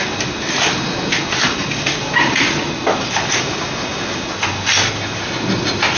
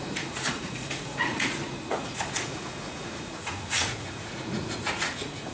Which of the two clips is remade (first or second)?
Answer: second